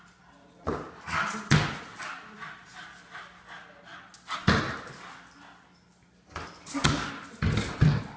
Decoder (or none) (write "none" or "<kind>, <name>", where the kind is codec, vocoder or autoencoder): none